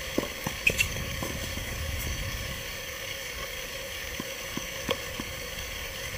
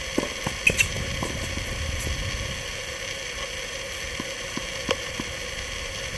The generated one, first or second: first